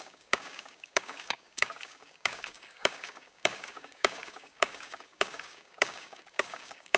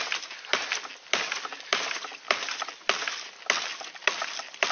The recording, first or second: second